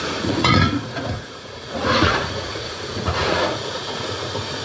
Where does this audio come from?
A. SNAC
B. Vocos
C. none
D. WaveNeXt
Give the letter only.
B